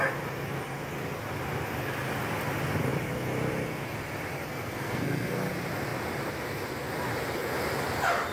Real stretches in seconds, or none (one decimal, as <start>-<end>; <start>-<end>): 0.0-4.5; 5.5-8.3